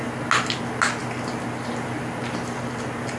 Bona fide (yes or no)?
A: yes